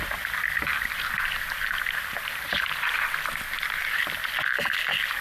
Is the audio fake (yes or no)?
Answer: no